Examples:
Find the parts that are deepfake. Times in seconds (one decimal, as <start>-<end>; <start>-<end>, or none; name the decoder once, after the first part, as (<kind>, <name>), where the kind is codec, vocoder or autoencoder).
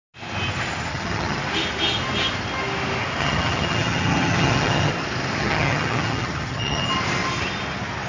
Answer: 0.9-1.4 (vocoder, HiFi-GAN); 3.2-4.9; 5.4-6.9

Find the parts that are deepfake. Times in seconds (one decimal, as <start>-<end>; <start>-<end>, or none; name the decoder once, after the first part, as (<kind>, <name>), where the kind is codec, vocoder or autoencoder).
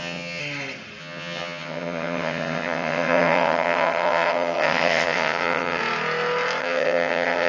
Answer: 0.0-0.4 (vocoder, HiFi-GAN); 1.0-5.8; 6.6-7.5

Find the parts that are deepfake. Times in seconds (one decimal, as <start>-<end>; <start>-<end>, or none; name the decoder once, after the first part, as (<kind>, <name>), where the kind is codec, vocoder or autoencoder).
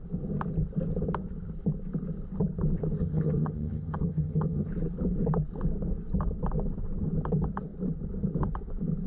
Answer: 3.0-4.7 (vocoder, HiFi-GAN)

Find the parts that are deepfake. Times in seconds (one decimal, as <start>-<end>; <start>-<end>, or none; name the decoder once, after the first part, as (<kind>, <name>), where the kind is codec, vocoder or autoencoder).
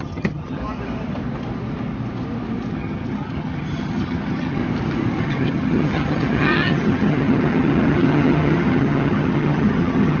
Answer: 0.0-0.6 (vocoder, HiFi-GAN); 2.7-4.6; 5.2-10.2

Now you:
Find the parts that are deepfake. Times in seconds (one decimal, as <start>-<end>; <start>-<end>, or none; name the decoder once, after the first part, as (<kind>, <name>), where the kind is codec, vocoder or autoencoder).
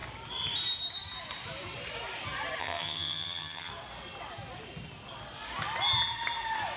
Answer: 2.6-3.7 (vocoder, HiFi-GAN)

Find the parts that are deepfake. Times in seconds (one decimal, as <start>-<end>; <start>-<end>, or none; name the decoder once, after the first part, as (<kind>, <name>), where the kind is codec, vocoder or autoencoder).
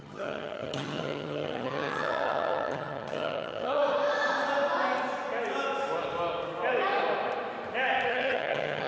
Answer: 0.0-3.8 (vocoder, HiFi-GAN); 8.1-8.9